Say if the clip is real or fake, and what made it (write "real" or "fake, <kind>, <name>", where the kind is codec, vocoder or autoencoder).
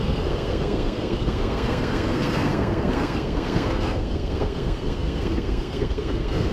fake, codec, SNAC